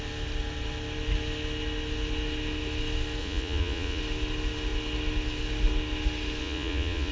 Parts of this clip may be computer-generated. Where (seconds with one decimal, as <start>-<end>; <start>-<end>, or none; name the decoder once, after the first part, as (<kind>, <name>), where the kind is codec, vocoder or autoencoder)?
3.2-4.0 (vocoder, Vocos); 6.4-7.1